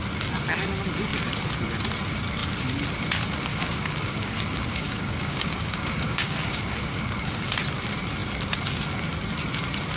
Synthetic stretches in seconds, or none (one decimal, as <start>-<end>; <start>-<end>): 3.5-7.4